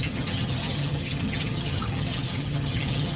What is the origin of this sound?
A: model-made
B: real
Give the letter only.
A